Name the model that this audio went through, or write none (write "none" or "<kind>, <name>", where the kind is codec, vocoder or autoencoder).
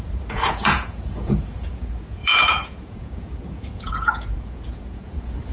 vocoder, Vocos